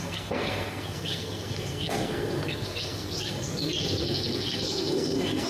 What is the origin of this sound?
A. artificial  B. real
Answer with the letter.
A